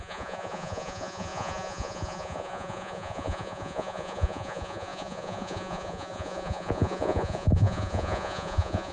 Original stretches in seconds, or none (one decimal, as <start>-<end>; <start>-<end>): none